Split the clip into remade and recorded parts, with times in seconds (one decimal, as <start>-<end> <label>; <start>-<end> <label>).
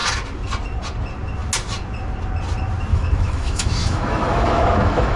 0.0-2.9 recorded; 2.9-5.2 remade